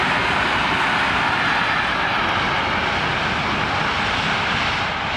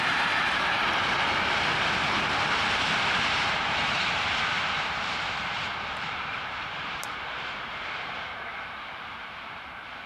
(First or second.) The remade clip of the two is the second